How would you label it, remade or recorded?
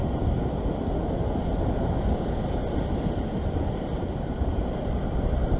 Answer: recorded